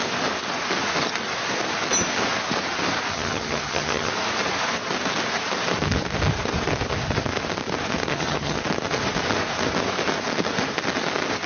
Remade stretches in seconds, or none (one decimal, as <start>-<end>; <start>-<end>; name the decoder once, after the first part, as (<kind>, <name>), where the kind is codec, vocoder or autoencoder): 3.1-4.1 (vocoder, HiFi-GAN); 8.1-8.6